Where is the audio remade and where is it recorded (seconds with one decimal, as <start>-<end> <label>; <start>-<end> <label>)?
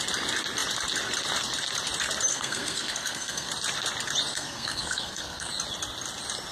0.0-2.3 recorded; 2.3-3.5 remade; 3.5-4.3 recorded; 4.3-5.5 remade; 5.5-6.5 recorded